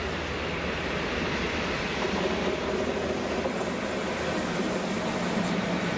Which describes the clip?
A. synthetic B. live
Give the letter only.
B